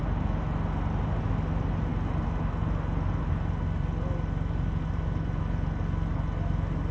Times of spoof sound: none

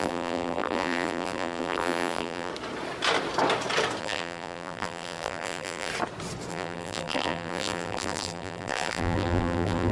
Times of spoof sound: 0.0-2.5 (vocoder, BigVGAN v2); 4.0-5.9; 6.5-9.9

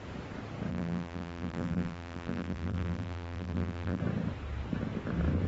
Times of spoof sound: 0.7-4.0 (vocoder, BigVGAN v2)